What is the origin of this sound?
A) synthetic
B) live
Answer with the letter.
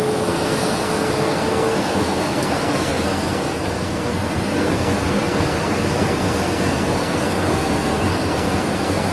A